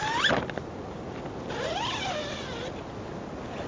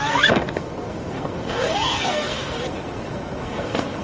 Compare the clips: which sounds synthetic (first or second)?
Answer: second